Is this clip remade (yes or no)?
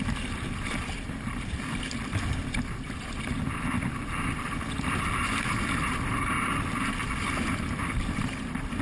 no